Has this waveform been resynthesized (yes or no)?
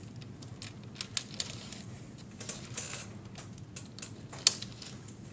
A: no